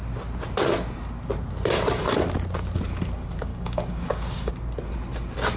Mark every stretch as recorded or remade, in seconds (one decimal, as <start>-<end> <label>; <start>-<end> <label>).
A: 0.0-3.5 recorded; 3.5-4.5 remade; 4.5-5.6 recorded